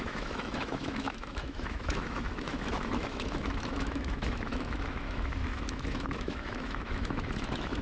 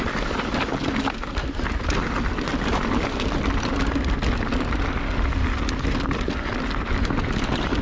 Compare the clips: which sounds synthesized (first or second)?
first